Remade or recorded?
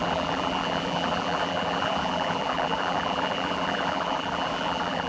remade